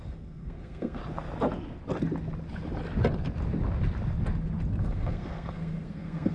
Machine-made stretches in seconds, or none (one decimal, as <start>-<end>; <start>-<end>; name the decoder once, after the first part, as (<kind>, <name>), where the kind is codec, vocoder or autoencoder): 0.0-1.0 (codec, SNAC); 4.8-6.3